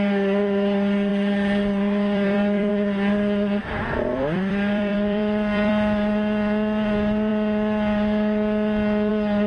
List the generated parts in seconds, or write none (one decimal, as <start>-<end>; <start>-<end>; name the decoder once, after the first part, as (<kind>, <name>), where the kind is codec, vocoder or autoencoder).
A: 1.1-2.7 (vocoder, BigVGAN v2); 3.6-5.7